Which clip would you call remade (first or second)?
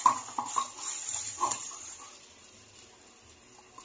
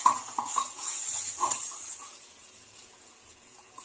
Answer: second